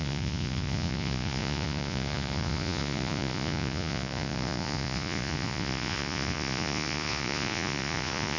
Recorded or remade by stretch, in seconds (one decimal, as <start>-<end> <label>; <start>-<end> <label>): 0.0-8.4 remade